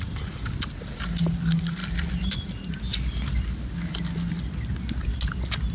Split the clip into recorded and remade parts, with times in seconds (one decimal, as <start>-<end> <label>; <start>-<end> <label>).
0.0-5.7 recorded